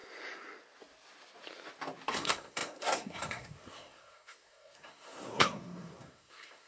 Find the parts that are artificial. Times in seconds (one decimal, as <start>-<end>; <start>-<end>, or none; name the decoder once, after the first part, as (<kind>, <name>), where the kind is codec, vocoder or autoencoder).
2.1-6.7 (codec, SNAC)